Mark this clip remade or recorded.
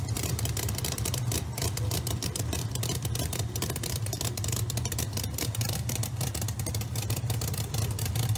remade